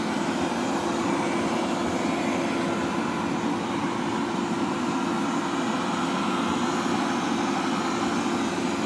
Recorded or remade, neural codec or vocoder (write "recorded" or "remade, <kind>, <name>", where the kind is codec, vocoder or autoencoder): recorded